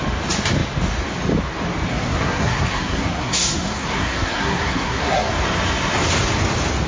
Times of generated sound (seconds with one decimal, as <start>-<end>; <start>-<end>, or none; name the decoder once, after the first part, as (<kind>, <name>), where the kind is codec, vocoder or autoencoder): 1.9-5.3 (codec, SNAC)